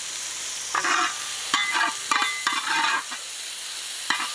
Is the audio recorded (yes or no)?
yes